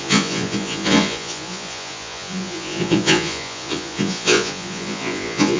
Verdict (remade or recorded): remade